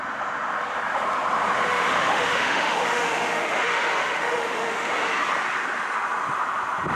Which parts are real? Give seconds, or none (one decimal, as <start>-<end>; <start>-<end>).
0.0-1.7; 4.9-6.9